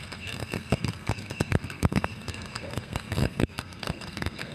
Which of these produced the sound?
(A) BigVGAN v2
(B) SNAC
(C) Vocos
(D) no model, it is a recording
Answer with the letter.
B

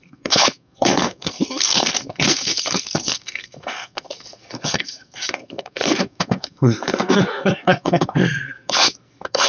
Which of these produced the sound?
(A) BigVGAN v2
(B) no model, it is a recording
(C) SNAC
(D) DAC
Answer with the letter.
C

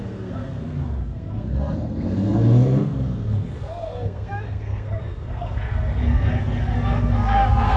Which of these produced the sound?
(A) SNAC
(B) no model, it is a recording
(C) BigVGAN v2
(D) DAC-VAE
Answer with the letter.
A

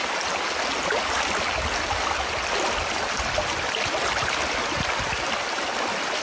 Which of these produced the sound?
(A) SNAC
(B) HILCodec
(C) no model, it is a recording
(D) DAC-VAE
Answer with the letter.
C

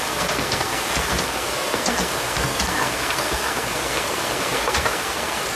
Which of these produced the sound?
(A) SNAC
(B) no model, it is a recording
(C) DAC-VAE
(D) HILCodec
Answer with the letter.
A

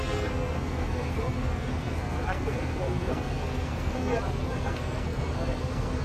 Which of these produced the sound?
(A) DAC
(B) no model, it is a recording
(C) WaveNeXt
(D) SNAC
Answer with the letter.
D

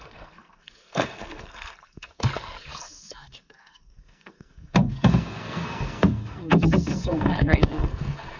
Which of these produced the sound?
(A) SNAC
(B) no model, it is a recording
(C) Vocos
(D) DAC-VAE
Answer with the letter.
A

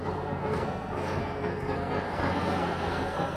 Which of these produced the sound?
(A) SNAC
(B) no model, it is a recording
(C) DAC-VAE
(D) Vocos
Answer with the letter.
A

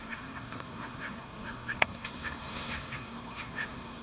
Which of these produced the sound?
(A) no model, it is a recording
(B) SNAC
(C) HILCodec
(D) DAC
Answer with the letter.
B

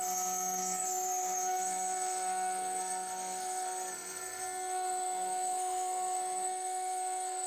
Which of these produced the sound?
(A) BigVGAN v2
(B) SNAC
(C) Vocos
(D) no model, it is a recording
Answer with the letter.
B